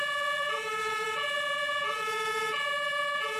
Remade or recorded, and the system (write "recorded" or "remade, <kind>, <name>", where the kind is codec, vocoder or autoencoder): remade, vocoder, BigVGAN v2